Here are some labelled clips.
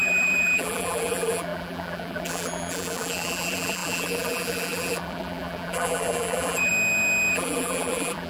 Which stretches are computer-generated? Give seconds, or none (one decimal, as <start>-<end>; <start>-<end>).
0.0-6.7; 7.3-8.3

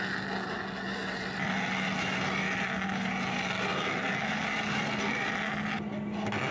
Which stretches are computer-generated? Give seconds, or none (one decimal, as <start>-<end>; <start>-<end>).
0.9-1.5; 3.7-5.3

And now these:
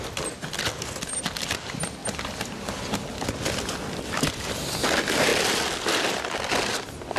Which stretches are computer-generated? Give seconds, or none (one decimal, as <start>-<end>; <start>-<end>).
none

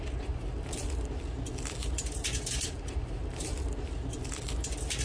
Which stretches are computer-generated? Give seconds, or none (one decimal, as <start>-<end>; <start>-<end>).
1.8-4.0

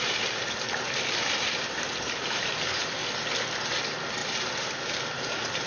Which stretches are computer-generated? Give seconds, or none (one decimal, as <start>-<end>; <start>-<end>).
0.0-3.0; 3.6-5.7